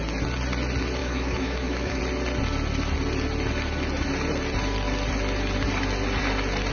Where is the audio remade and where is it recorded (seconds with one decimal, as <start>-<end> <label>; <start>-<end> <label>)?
0.0-1.0 recorded; 1.0-2.0 remade; 2.0-6.7 recorded